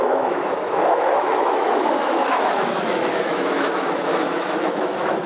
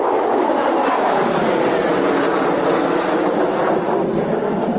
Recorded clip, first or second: second